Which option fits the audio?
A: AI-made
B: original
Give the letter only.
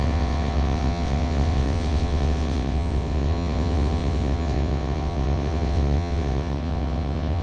A